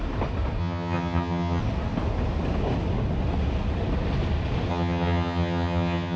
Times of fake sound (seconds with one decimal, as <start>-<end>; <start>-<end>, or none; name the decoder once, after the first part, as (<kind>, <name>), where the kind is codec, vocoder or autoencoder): 0.6-1.6 (vocoder, HiFi-GAN); 4.7-6.2